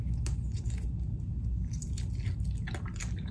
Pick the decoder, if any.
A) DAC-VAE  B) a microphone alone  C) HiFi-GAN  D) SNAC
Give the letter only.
B